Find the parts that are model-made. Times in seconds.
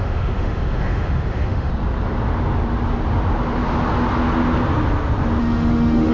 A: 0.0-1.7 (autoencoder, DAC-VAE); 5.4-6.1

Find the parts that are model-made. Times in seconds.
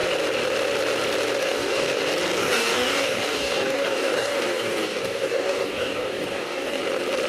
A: 1.4-2.0 (codec, DAC); 2.4-6.8